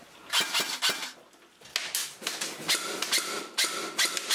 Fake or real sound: real